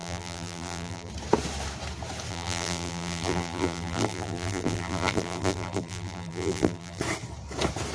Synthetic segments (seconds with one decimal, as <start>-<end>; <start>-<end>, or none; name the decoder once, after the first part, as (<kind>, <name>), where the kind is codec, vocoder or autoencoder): 0.0-1.1 (vocoder, BigVGAN v2); 2.3-7.0